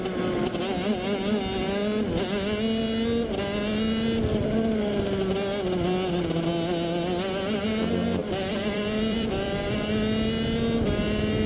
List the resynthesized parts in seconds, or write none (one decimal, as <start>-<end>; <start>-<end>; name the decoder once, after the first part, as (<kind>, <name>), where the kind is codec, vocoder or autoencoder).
8.2-9.9 (vocoder, BigVGAN v2)